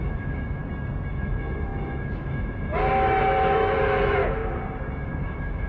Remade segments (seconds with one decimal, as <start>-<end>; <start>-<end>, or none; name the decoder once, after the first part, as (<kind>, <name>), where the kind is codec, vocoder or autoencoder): 0.0-0.6 (autoencoder, DAC-VAE); 1.1-4.2; 5.0-5.7